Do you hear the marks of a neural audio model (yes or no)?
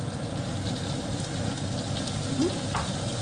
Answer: no